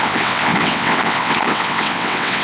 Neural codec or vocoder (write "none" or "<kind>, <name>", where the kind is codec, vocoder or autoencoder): vocoder, WaveNeXt